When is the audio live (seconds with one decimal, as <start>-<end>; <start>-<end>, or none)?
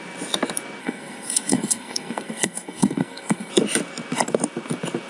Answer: 0.0-0.8; 3.5-5.1